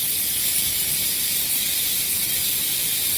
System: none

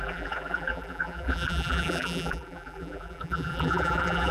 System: vocoder, BigVGAN v2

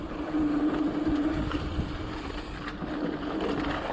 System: none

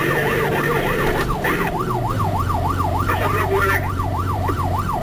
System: vocoder, BigVGAN v2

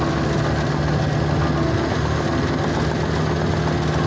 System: none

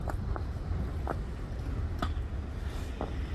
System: none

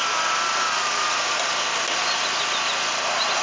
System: none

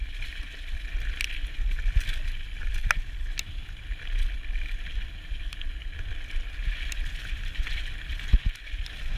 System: none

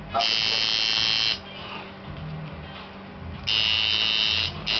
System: none